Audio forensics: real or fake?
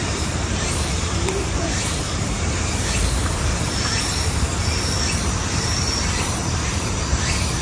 fake